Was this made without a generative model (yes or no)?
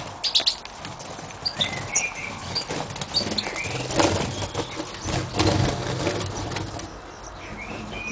yes